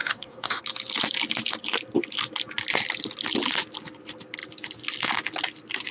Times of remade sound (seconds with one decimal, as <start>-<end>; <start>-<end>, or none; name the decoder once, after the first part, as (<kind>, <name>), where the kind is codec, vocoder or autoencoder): 0.0-0.6 (codec, DAC)